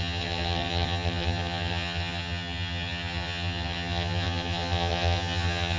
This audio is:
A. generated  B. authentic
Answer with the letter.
A